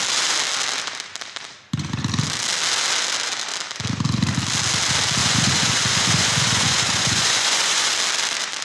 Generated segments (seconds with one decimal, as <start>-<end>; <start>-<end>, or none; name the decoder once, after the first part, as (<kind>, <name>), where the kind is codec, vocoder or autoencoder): 5.2-7.9 (vocoder, Vocos)